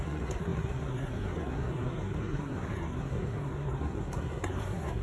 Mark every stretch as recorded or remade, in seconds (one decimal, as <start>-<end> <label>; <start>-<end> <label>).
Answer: 0.0-5.0 remade